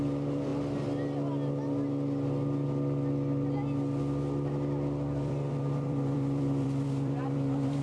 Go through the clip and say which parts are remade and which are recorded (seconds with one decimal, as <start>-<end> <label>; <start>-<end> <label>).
0.0-0.5 remade; 0.5-5.2 recorded; 5.2-7.8 remade